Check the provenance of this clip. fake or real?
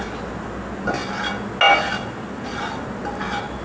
real